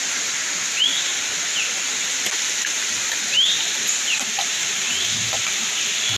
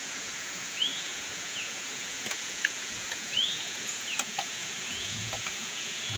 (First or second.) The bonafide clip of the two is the first